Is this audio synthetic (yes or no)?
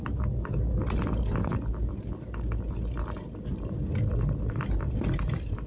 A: no